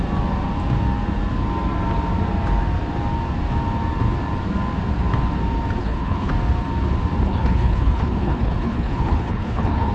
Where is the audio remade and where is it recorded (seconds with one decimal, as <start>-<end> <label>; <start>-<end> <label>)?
0.0-5.8 recorded; 5.8-6.3 remade; 6.3-7.2 recorded; 7.2-9.9 remade